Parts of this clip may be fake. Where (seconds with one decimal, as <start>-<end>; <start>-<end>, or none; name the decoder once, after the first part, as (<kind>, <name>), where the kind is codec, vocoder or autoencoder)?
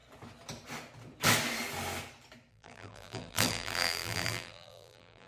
2.5-5.3 (vocoder, BigVGAN v2)